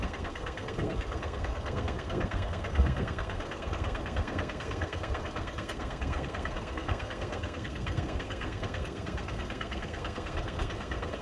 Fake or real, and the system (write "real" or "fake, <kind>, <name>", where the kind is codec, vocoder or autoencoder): fake, codec, SNAC